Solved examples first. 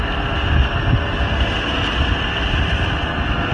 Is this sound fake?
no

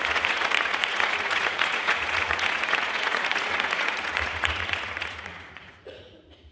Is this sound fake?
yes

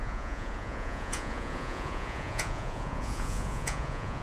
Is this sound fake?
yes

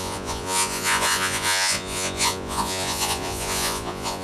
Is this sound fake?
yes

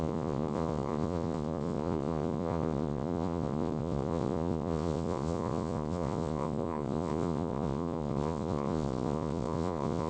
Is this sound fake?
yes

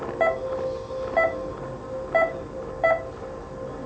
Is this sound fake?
no